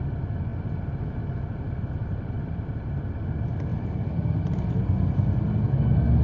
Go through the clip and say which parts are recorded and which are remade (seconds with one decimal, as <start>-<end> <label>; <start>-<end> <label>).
0.0-0.5 recorded; 0.5-1.4 remade; 1.4-2.0 recorded; 2.0-3.2 remade; 3.2-3.7 recorded; 3.7-4.8 remade; 4.8-6.2 recorded